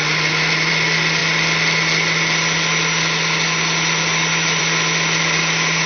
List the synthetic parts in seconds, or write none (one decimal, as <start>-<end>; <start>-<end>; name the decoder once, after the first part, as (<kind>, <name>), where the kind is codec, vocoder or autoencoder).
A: 0.0-0.7 (vocoder, BigVGAN v2)